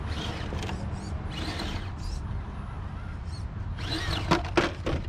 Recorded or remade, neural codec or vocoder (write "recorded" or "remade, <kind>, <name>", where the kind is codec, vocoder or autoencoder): recorded